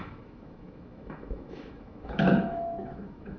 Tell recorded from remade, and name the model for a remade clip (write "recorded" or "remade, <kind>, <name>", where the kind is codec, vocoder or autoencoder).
remade, autoencoder, DAC-VAE